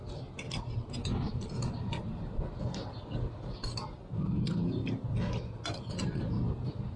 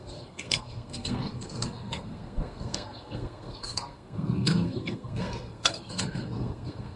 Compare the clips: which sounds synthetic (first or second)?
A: second